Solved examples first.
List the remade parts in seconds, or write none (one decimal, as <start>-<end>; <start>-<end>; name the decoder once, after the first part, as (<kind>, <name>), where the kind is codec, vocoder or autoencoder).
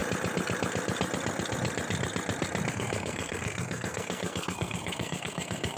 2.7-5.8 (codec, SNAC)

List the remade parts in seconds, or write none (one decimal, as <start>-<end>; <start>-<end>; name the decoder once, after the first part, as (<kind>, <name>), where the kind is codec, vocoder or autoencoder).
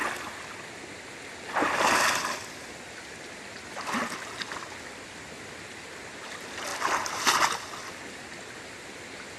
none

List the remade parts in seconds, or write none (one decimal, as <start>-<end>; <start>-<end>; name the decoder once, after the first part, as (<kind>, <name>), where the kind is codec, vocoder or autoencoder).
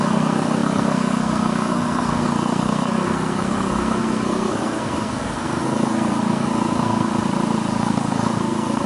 0.0-7.1 (codec, SNAC); 7.7-8.9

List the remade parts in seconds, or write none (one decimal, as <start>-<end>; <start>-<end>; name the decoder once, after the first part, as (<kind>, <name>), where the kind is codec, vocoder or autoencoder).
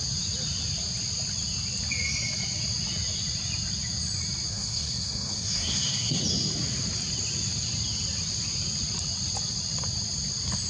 4.5-6.2 (codec, SNAC)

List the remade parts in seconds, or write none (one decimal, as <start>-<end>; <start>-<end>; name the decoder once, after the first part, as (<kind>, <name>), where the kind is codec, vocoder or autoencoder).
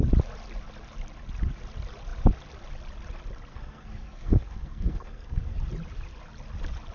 3.5-5.6 (codec, SNAC)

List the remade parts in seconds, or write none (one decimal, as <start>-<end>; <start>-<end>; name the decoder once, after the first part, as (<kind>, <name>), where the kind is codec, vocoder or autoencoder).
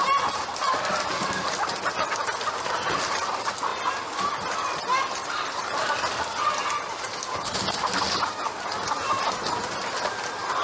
none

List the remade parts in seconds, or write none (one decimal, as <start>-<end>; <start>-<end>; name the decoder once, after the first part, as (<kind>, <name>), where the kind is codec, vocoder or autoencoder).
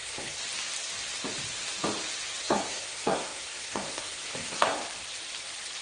0.0-0.4 (codec, SNAC); 2.4-4.8